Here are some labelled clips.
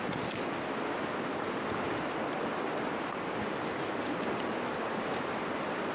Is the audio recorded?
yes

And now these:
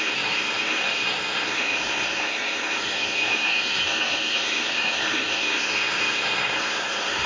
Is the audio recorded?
no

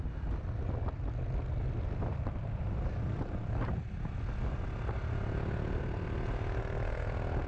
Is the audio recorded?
yes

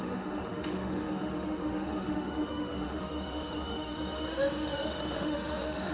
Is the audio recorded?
no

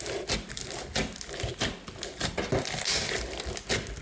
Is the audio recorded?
yes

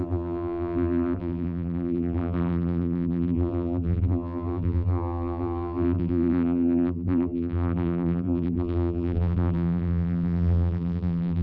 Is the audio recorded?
no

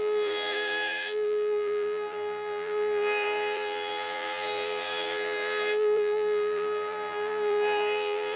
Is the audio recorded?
no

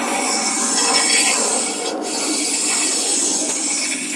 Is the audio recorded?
no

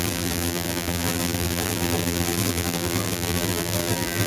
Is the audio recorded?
no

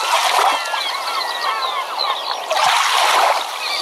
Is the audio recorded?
yes